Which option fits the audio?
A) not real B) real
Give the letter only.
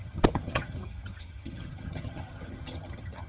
A